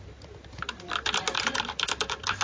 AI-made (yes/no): no